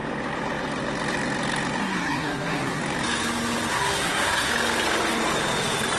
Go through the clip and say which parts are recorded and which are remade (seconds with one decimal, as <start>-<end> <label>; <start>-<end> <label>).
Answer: 0.0-1.8 recorded; 1.8-2.8 remade; 2.8-3.7 recorded; 3.7-4.5 remade; 4.5-6.0 recorded